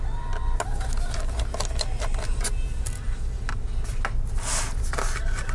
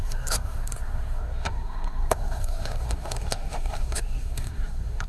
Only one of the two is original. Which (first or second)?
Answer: first